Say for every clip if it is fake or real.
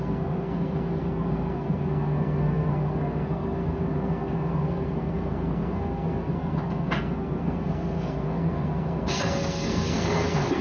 fake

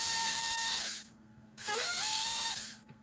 fake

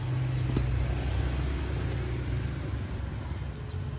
real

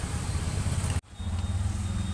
real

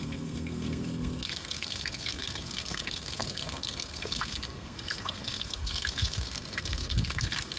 fake